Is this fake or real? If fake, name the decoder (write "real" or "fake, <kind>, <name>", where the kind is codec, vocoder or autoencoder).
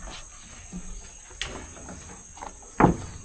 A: real